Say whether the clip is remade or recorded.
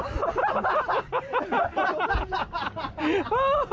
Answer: recorded